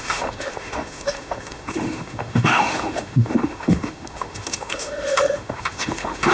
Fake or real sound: fake